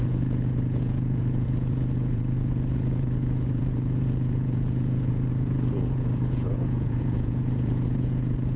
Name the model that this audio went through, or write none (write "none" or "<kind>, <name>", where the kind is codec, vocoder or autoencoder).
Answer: vocoder, Vocos